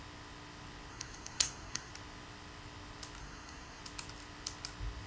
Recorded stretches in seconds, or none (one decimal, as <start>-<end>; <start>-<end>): 0.0-0.9; 1.9-3.2; 3.8-5.1